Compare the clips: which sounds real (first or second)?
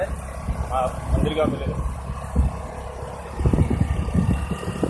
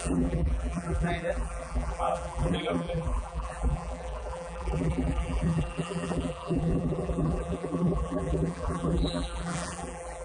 first